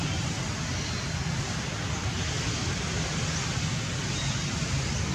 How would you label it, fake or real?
real